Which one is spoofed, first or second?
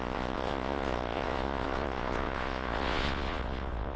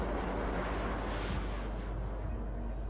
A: first